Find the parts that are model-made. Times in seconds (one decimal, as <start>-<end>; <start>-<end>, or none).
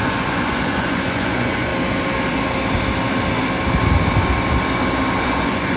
0.0-1.7; 5.2-5.8